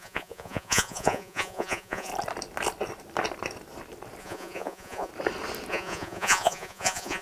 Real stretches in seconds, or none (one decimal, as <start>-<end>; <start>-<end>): 2.1-4.2; 5.1-5.7